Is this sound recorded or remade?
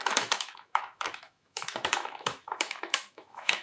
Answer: remade